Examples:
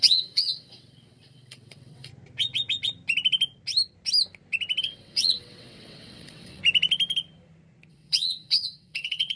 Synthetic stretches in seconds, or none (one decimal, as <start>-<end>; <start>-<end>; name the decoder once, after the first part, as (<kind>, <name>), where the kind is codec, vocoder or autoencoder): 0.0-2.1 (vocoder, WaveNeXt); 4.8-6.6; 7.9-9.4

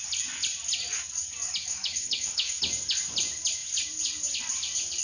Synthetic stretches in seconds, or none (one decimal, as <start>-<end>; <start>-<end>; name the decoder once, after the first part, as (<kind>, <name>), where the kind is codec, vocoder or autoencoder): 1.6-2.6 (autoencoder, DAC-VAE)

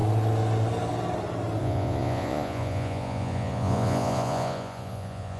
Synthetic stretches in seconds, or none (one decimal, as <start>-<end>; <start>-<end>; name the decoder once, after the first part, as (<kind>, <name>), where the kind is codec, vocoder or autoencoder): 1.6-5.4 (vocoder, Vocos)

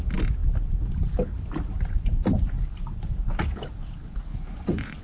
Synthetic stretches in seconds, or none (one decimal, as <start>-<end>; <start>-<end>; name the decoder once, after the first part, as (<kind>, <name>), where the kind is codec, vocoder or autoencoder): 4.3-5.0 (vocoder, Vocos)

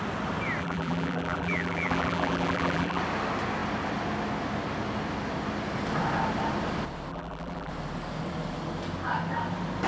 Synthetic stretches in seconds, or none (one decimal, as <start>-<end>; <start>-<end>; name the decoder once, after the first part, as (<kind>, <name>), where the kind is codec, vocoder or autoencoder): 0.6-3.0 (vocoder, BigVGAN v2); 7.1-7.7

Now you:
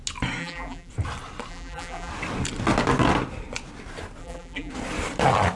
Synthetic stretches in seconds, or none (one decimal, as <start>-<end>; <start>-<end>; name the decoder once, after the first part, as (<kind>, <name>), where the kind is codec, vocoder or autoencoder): 0.4-0.9 (vocoder, BigVGAN v2); 1.5-2.1; 4.2-4.7